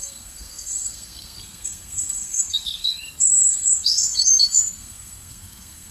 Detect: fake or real fake